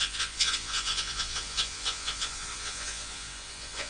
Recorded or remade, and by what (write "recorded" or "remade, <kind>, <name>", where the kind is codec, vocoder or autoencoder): remade, vocoder, Vocos